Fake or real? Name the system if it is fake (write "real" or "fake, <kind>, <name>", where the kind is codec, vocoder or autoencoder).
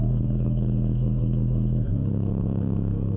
fake, autoencoder, DAC-VAE